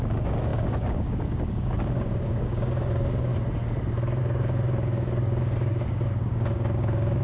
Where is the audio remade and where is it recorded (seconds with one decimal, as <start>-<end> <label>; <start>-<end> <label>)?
0.0-3.3 remade; 3.3-4.2 recorded; 4.2-7.2 remade